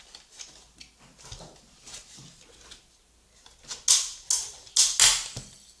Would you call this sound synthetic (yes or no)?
no